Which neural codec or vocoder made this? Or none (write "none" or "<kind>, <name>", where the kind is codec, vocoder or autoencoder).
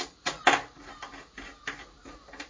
none